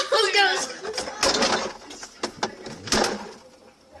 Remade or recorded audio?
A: recorded